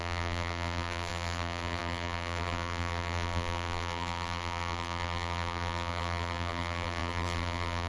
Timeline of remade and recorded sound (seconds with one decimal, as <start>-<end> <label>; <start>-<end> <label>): 0.0-7.9 remade